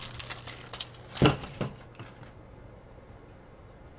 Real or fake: real